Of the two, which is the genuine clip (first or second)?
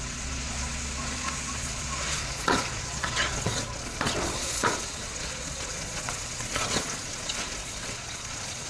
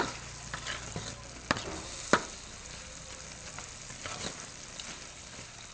second